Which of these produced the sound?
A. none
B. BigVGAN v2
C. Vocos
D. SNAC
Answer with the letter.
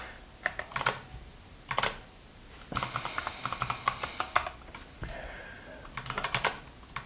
A